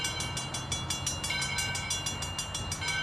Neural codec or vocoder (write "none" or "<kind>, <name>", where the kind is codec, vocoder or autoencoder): none